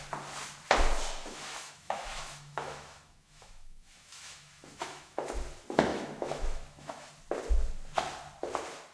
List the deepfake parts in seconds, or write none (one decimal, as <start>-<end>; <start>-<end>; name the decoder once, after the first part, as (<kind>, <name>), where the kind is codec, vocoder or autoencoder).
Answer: 1.2-5.2 (autoencoder, DAC-VAE); 5.9-7.1